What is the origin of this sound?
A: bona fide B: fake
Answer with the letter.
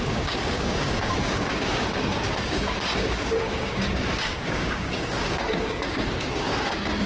B